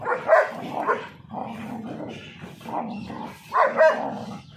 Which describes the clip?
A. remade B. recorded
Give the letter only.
B